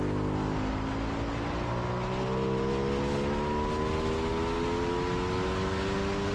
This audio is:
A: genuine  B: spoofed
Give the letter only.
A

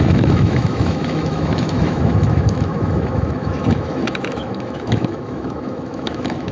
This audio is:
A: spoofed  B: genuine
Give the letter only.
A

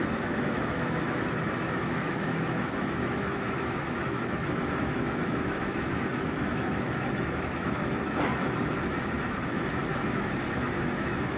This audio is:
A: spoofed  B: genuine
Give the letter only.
A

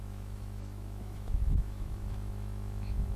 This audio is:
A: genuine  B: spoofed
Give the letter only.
B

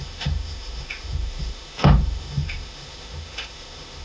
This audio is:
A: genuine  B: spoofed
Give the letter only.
B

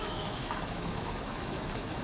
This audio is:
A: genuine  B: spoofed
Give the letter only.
B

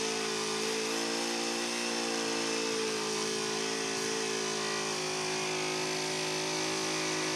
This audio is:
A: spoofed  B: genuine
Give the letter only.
B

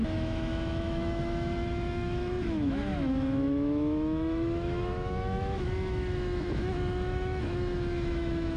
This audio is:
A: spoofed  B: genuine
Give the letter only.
A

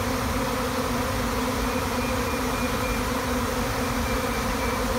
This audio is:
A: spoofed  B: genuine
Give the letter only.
B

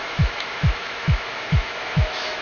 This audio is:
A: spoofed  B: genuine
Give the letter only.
A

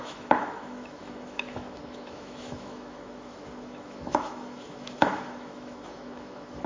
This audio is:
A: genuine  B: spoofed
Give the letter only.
B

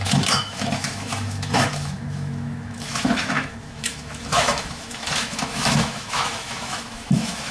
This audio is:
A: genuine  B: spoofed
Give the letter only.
B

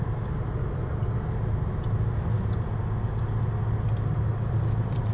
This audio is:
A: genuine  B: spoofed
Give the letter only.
A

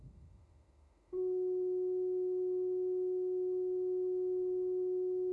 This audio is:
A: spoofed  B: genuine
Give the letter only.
A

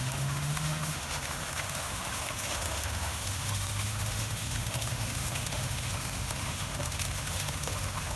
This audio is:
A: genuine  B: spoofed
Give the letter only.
B